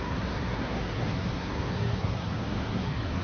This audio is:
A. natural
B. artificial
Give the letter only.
B